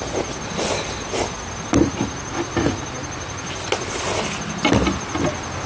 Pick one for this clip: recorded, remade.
recorded